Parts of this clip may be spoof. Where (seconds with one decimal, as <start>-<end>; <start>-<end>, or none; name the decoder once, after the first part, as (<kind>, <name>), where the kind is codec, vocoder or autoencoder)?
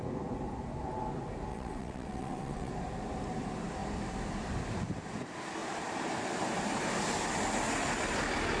1.5-2.7 (vocoder, WaveNeXt)